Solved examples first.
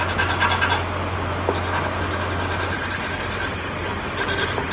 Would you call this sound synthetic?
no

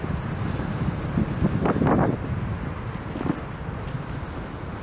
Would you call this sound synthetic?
no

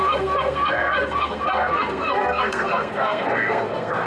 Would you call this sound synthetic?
yes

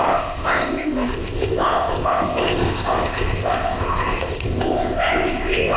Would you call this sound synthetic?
yes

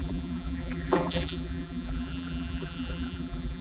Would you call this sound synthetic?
yes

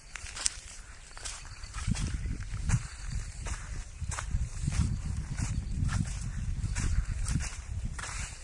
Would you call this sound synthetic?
yes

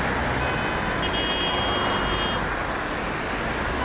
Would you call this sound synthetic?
no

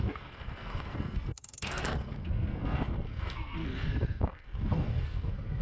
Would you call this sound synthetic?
yes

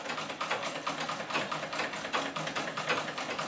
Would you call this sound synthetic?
no